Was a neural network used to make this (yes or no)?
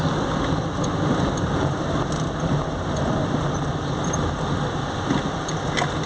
no